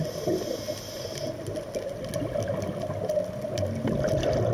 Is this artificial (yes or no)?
no